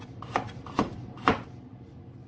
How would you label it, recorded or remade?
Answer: recorded